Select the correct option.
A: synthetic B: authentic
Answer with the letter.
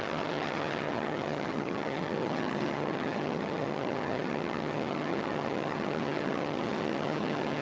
A